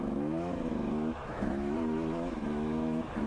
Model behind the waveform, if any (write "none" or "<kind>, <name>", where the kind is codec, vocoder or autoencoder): autoencoder, DAC-VAE